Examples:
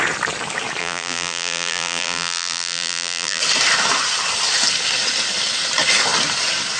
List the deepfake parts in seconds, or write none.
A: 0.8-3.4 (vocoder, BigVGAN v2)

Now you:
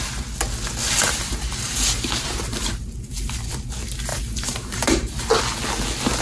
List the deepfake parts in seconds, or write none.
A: 1.0-3.5 (vocoder, BigVGAN v2); 4.1-5.4

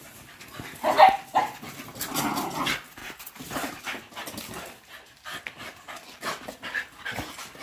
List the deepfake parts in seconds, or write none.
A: 3.0-3.8 (vocoder, BigVGAN v2)

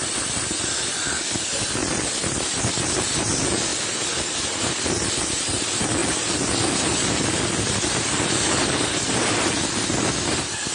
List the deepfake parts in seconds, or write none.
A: 1.8-2.6 (vocoder, BigVGAN v2); 3.7-4.6

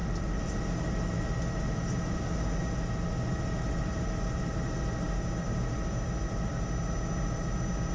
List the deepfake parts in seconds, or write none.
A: none

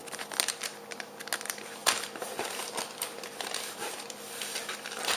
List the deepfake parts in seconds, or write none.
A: 1.8-5.2 (vocoder, BigVGAN v2)

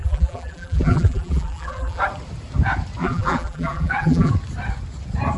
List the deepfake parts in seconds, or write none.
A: 0.0-2.0 (vocoder, BigVGAN v2); 3.0-4.3